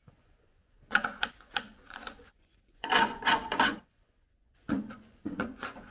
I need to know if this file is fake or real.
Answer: fake